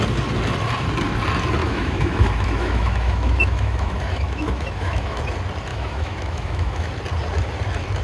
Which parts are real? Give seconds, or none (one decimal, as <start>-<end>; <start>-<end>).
0.0-1.6; 5.2-5.7; 6.9-8.0